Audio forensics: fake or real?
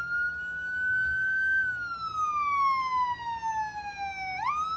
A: real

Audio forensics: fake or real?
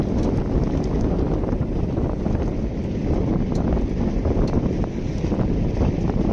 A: real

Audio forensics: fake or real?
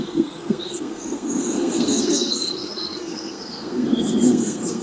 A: fake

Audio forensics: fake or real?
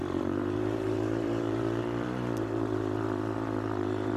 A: fake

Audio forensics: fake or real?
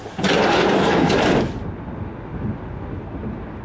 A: real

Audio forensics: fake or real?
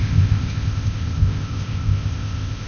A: fake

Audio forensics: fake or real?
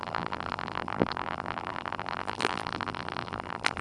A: fake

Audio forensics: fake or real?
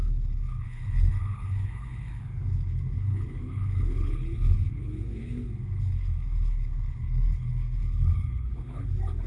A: fake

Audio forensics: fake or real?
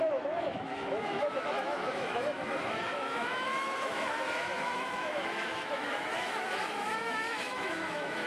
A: fake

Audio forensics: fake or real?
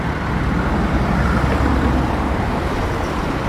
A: fake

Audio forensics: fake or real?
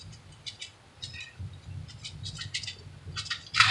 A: real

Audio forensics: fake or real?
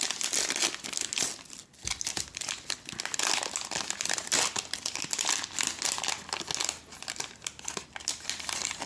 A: real